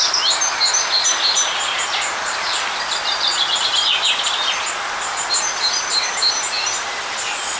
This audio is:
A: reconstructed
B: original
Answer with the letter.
B